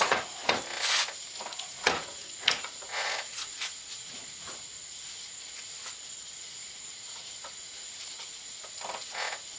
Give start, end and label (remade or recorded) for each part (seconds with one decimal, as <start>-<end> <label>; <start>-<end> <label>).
0.0-0.4 remade; 0.4-1.4 recorded; 1.4-9.6 remade